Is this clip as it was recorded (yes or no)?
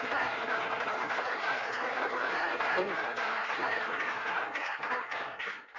no